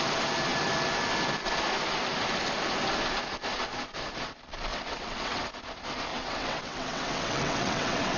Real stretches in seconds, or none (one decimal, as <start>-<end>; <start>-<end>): 0.0-4.7; 5.4-6.1